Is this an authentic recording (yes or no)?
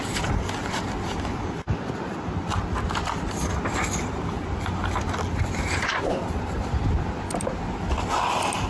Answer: yes